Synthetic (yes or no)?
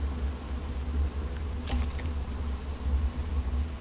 no